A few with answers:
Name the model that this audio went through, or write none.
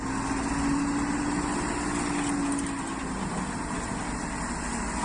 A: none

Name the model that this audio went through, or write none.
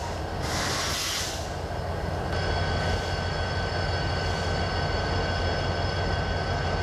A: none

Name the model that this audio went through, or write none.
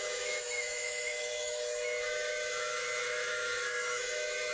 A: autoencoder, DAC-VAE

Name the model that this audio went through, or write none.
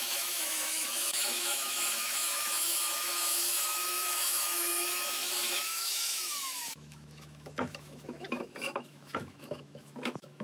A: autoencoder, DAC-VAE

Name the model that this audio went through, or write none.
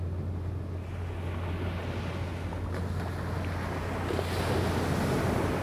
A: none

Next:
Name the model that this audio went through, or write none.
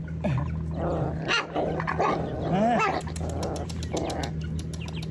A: none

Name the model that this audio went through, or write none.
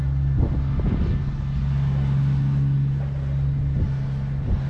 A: none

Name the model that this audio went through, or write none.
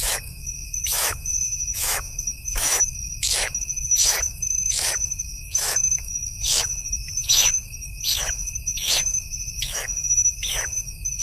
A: autoencoder, DAC-VAE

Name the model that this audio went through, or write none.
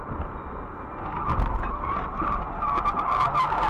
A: none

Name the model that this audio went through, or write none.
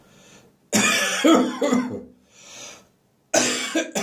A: none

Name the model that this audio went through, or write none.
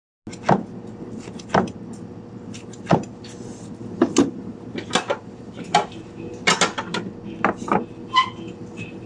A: none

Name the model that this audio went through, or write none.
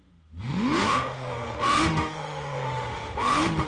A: autoencoder, DAC-VAE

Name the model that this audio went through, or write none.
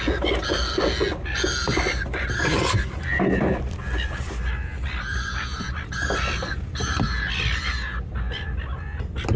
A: none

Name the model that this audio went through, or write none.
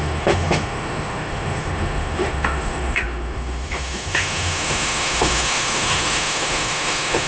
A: autoencoder, DAC-VAE